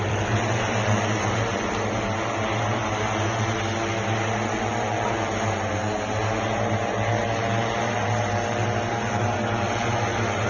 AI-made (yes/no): no